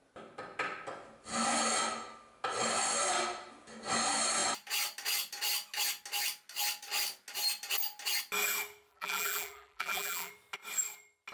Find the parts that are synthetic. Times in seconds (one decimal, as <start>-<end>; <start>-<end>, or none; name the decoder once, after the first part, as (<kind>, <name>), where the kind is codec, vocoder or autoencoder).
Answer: 8.9-10.3 (vocoder, BigVGAN v2)